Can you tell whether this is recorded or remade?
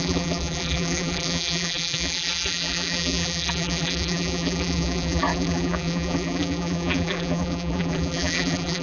remade